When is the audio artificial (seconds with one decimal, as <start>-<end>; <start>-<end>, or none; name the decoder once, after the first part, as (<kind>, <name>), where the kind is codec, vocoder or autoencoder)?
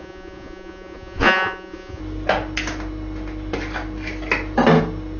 0.0-2.0 (vocoder, Vocos)